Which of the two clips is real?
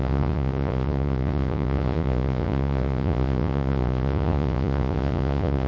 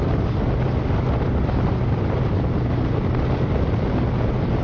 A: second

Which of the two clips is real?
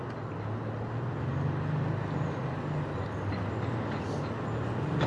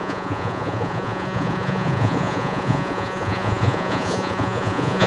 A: first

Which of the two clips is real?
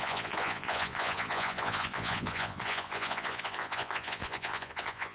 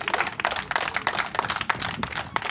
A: second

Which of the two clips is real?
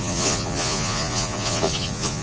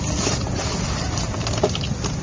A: second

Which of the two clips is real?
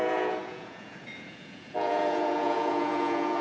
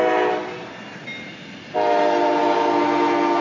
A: second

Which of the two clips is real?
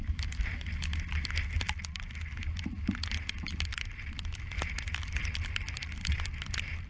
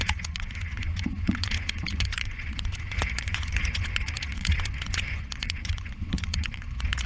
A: first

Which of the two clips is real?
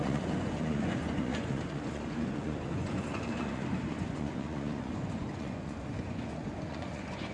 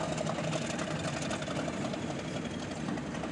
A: second